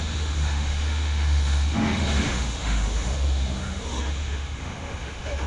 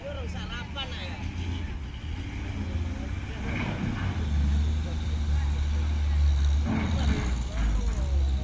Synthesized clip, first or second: first